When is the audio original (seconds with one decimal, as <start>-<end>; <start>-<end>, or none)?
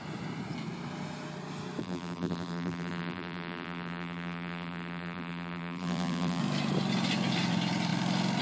0.0-1.8; 6.4-8.4